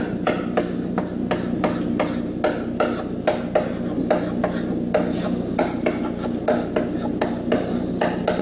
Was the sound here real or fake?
real